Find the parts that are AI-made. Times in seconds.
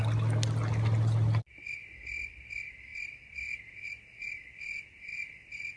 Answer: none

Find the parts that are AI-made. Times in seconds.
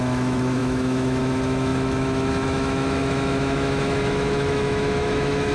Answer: 0.0-5.5 (autoencoder, DAC-VAE)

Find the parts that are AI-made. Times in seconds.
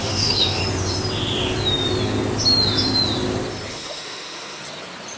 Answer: 0.0-0.6 (autoencoder, DAC-VAE); 3.7-4.6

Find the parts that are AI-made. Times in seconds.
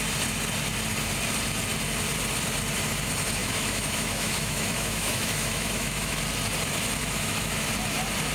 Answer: 3.4-6.2 (autoencoder, DAC-VAE); 7.0-7.7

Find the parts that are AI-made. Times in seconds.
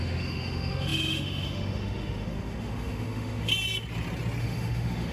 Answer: 0.0-3.5 (autoencoder, DAC-VAE); 4.4-5.1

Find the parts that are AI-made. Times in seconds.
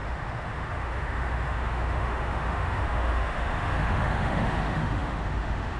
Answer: 0.0-5.8 (autoencoder, DAC-VAE)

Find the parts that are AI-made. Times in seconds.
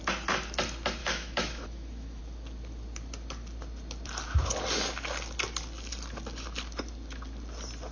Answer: 1.0-2.2 (autoencoder, DAC-VAE)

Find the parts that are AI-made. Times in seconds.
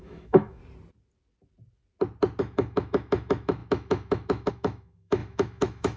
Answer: 0.0-0.6 (autoencoder, DAC-VAE); 2.4-6.0